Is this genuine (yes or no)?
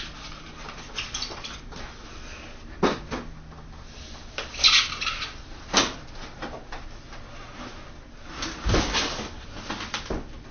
yes